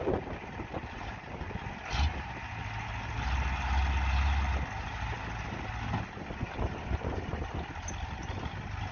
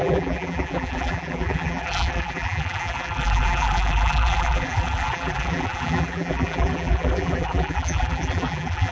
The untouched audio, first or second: first